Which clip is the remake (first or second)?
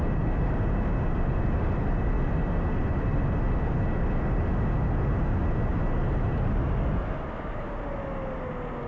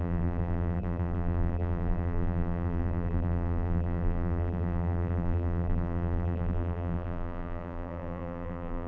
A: second